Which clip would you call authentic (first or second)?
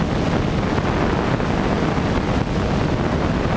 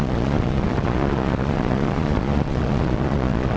first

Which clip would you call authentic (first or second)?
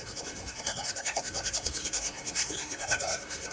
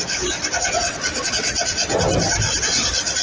second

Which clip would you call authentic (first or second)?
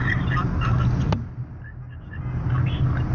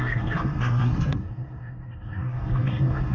first